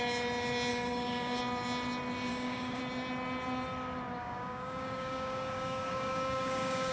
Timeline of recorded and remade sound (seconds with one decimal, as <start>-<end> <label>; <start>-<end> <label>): 0.0-0.7 recorded; 0.7-1.4 remade; 1.4-2.3 recorded; 2.3-2.8 remade; 2.8-4.2 recorded; 4.2-6.9 remade